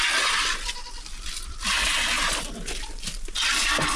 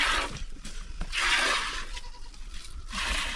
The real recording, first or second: first